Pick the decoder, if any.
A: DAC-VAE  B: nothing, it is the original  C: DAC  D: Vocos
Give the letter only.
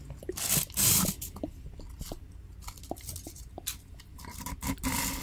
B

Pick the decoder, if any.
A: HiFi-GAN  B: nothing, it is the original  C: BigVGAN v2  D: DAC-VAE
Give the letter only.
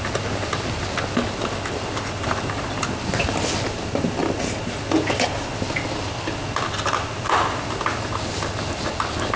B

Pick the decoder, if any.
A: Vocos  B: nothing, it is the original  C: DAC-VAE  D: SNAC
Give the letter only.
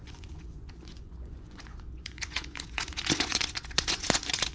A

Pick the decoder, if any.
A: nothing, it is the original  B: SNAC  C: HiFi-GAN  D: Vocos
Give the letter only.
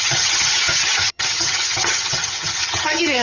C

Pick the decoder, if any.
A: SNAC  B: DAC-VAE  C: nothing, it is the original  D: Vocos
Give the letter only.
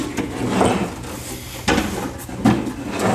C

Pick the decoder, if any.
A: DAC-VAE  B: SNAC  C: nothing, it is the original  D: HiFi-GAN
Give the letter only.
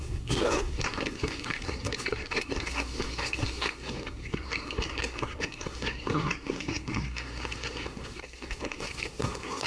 B